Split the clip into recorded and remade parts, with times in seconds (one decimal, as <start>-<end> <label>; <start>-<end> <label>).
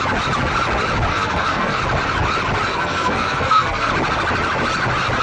0.0-1.1 recorded; 1.1-1.8 remade; 1.8-2.7 recorded; 2.7-3.9 remade; 3.9-5.2 recorded